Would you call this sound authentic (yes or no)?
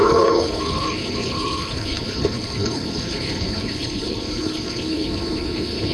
no